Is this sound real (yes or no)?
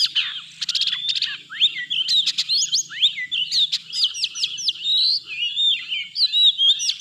yes